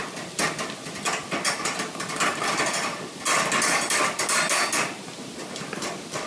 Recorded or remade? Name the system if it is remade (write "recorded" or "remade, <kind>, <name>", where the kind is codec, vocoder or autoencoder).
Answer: recorded